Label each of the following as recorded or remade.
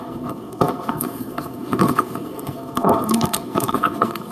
remade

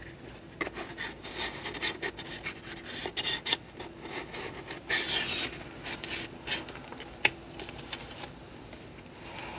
recorded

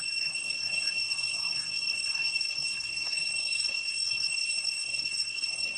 remade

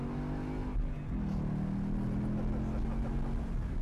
recorded